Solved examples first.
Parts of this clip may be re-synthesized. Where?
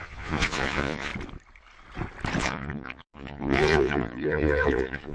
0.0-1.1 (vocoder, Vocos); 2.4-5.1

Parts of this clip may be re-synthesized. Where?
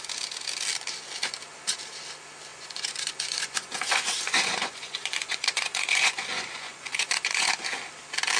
2.5-7.5 (vocoder, Vocos)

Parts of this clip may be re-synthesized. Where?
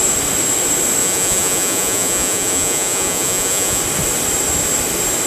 1.0-3.8 (vocoder, Vocos)